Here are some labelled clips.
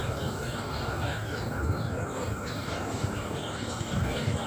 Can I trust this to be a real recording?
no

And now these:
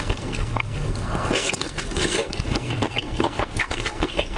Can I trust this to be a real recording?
no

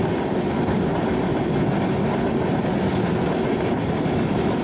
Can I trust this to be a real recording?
yes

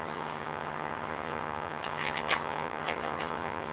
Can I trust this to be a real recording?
no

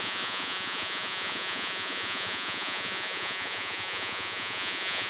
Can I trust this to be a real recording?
no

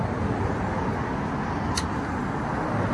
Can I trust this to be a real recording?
yes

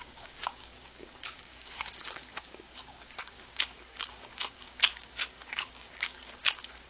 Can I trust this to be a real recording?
no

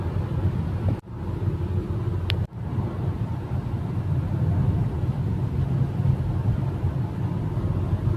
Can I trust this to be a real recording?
yes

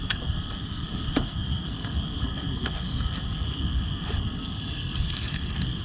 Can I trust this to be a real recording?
no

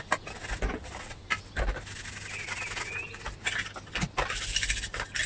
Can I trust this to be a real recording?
yes